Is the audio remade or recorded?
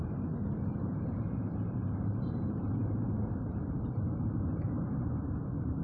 remade